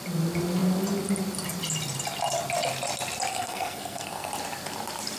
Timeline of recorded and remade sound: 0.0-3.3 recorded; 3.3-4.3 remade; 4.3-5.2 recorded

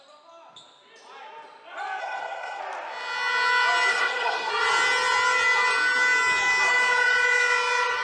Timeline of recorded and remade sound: 0.0-2.0 recorded; 2.0-2.6 remade; 2.6-3.9 recorded; 3.9-4.5 remade; 4.5-8.0 recorded

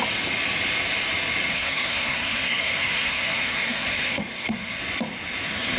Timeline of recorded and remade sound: 0.0-1.5 recorded; 1.5-4.8 remade; 4.8-5.8 recorded

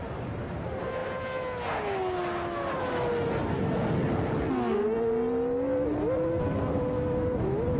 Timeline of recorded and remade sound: 0.0-7.8 recorded

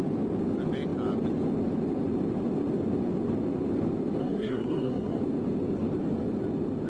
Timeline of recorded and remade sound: 0.0-4.2 recorded; 4.2-5.2 remade; 5.2-6.9 recorded